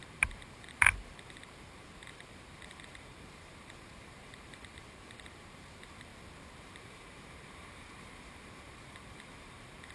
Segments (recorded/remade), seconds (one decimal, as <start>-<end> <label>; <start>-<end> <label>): 0.0-6.1 remade; 6.1-6.6 recorded; 6.6-9.9 remade